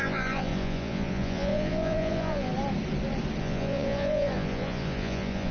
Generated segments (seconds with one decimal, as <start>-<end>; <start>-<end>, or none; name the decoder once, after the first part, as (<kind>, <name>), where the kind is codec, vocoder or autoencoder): 0.0-2.5 (vocoder, Vocos); 3.4-5.5